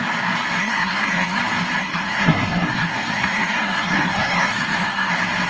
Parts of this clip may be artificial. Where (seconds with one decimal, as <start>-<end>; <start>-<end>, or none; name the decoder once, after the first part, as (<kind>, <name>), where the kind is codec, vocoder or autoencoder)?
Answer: 0.6-1.4 (codec, SNAC); 1.8-5.1

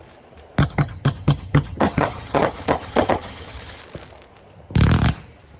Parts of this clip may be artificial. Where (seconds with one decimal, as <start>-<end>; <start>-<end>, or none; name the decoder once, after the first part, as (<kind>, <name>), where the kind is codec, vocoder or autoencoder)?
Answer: 0.6-3.8 (vocoder, HiFi-GAN)